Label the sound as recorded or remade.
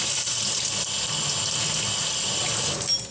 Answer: recorded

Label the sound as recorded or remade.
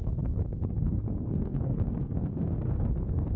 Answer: remade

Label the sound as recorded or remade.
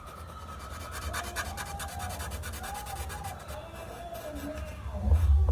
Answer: recorded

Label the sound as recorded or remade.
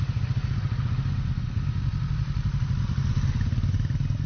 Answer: recorded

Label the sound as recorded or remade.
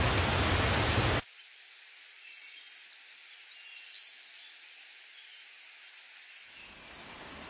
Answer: recorded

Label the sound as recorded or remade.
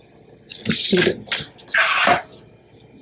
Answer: remade